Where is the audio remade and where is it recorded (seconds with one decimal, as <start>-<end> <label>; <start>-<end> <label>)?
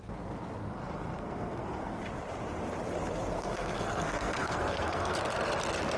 0.0-0.6 recorded; 0.6-2.0 remade; 2.0-3.3 recorded; 3.3-5.2 remade; 5.2-6.0 recorded